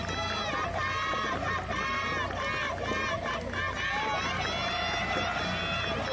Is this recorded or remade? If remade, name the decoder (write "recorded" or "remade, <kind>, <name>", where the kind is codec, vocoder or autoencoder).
recorded